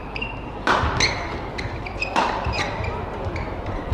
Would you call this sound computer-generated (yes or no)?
no